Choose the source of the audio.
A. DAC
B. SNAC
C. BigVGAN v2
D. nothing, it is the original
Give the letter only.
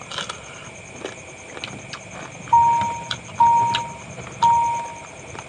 D